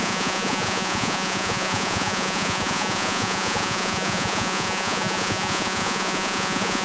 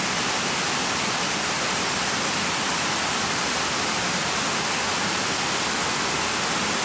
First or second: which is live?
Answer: second